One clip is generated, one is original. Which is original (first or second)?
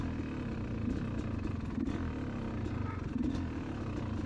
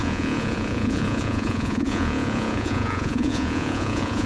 first